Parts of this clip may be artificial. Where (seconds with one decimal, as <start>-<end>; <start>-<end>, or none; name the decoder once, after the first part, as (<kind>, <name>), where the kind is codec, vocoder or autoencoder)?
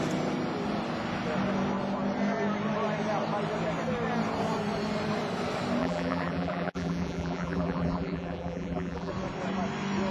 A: 5.8-9.1 (vocoder, BigVGAN v2)